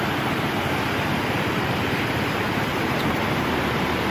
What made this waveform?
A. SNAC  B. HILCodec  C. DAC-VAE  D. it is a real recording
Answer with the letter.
D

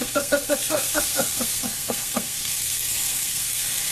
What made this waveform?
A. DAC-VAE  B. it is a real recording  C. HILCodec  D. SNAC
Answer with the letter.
D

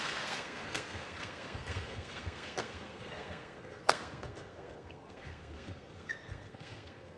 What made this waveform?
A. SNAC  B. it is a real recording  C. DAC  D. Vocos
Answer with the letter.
A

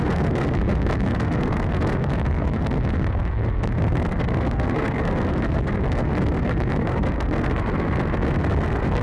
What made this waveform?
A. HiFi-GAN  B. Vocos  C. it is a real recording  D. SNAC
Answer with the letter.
D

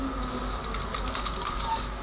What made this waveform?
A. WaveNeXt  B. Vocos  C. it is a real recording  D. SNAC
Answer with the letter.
C